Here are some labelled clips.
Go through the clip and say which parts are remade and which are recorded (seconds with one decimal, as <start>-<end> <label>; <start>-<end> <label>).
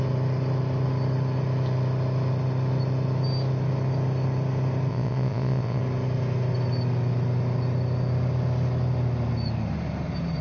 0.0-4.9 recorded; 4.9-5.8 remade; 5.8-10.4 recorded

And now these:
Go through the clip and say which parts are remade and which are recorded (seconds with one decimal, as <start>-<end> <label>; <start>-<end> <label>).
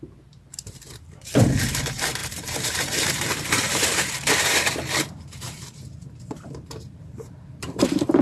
0.0-8.2 remade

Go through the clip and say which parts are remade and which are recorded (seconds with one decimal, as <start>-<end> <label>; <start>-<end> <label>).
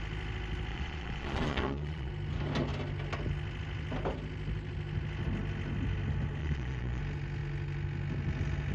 0.0-0.7 recorded; 0.7-2.1 remade; 2.1-6.4 recorded; 6.4-7.0 remade; 7.0-8.7 recorded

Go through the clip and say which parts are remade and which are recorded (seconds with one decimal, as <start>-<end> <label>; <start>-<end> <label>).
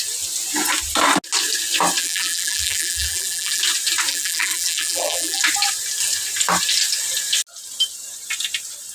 0.0-2.0 recorded; 2.0-3.6 remade; 3.6-4.1 recorded; 4.1-5.4 remade; 5.4-8.9 recorded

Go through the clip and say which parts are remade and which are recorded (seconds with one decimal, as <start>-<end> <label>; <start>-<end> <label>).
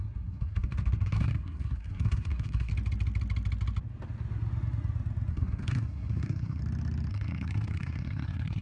0.0-2.7 remade; 2.7-5.3 recorded; 5.3-6.6 remade; 6.6-7.1 recorded; 7.1-8.6 remade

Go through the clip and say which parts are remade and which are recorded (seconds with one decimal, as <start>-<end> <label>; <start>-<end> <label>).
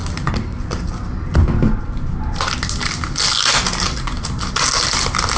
0.0-5.4 recorded